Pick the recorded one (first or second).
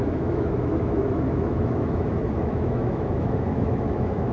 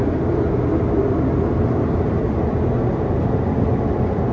second